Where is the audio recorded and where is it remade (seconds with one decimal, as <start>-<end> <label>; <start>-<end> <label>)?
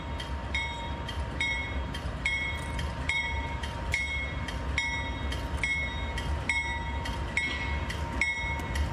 0.0-0.4 recorded; 0.4-4.5 remade; 4.5-8.9 recorded